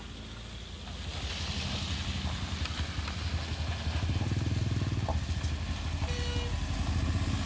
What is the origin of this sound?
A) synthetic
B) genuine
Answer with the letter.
B